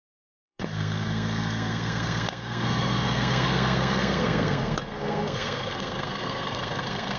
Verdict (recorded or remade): remade